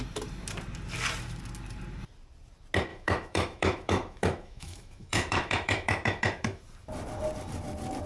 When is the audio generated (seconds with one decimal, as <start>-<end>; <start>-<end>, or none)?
2.9-6.6